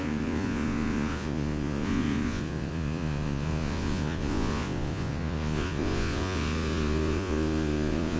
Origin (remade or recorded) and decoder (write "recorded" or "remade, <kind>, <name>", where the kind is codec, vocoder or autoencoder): remade, vocoder, Vocos